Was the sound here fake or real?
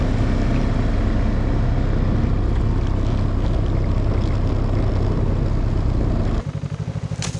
real